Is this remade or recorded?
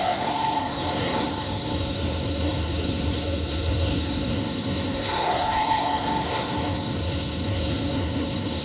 remade